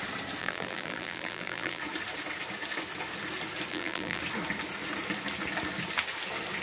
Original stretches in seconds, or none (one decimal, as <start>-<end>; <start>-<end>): 0.0-0.4; 1.8-3.7; 4.2-6.6